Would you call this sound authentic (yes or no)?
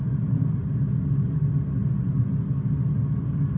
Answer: yes